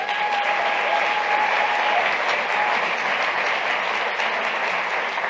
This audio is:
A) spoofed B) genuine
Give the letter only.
B